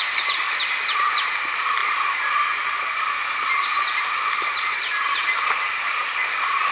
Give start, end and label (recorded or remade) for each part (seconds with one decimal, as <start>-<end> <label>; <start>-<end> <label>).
0.0-6.7 recorded